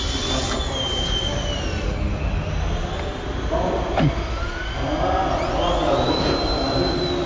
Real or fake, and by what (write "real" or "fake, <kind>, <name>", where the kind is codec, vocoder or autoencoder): real